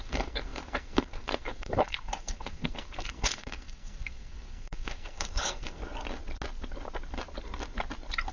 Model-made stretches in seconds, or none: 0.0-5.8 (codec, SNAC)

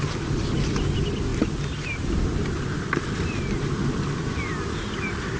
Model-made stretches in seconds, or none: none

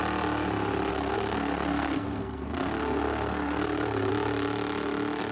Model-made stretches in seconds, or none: 0.9-4.1 (codec, SNAC)

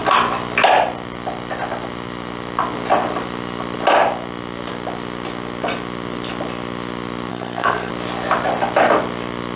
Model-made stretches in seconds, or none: 7.3-7.9 (codec, SNAC)